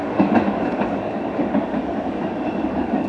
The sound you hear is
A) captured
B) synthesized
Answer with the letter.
B